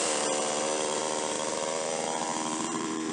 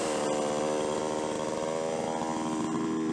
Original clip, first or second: second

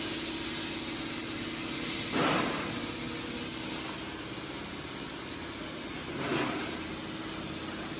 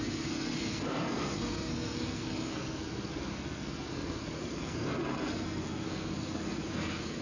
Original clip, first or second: first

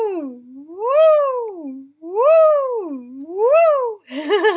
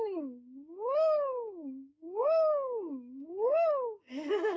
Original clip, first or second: first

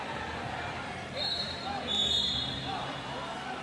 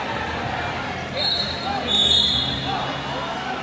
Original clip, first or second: second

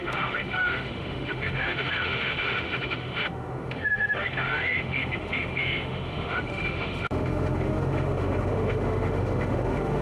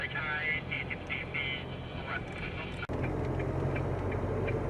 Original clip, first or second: second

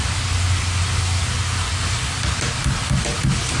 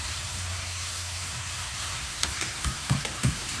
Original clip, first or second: first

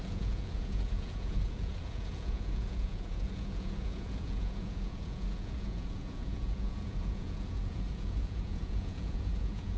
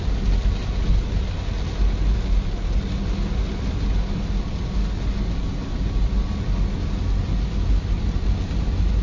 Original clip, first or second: second